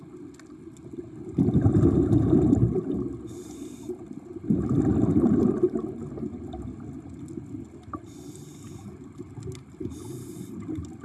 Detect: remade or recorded recorded